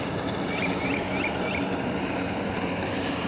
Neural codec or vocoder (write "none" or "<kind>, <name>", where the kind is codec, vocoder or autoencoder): vocoder, BigVGAN v2